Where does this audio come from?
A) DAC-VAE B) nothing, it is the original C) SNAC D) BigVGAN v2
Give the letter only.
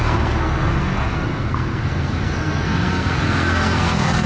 C